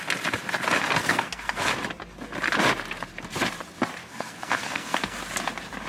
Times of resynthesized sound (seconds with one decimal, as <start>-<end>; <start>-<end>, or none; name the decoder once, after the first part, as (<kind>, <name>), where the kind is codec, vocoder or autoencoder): 1.0-1.7 (codec, SNAC); 4.0-5.2